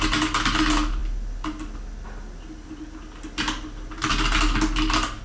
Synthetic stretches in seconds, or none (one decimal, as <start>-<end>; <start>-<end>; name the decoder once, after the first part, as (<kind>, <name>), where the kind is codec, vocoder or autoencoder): none